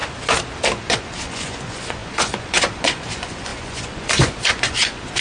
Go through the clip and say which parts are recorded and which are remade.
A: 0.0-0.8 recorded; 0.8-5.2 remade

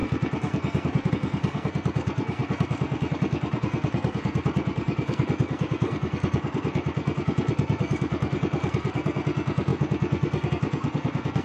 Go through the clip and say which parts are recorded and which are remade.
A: 0.0-11.4 remade